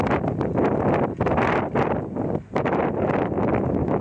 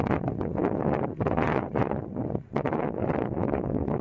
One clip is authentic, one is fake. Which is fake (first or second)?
second